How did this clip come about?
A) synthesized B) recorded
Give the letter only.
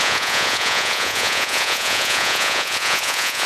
A